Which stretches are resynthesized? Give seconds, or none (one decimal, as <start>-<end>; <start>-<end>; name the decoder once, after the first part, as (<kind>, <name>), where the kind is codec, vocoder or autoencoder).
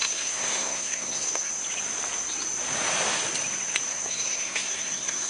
0.0-1.5 (codec, SNAC); 3.9-5.3